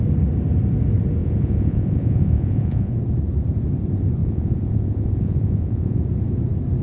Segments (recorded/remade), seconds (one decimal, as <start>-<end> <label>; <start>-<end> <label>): 0.0-1.2 recorded; 1.2-2.9 remade; 2.9-4.2 recorded; 4.2-6.0 remade; 6.0-6.8 recorded